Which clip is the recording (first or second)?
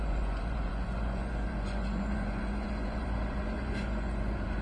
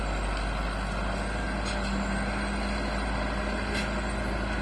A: second